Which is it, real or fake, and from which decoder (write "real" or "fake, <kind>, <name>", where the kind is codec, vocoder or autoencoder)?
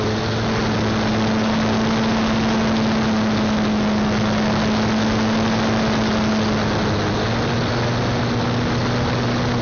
real